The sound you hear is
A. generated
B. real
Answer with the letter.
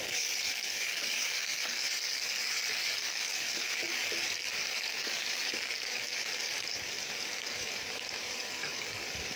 A